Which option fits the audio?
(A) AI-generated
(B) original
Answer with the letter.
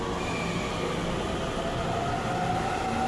B